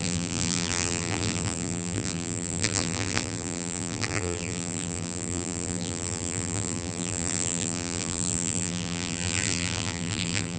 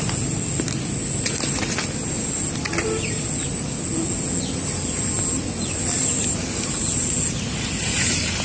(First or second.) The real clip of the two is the second